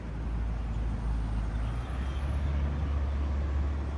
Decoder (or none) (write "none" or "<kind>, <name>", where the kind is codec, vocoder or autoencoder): none